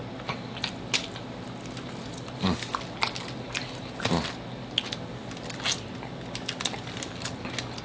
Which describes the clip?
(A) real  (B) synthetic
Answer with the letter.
A